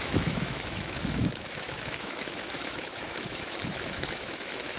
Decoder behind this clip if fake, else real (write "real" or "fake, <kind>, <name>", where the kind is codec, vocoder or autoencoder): fake, autoencoder, DAC-VAE